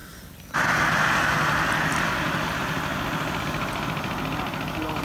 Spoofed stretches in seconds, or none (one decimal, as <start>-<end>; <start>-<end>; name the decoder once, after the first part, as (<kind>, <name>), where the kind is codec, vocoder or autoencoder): 0.0-0.5 (vocoder, BigVGAN v2)